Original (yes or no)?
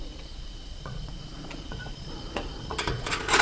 no